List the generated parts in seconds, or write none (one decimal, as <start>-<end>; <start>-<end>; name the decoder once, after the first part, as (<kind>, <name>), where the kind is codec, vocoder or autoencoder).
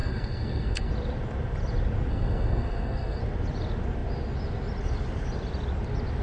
0.0-0.9 (codec, SNAC); 2.1-3.2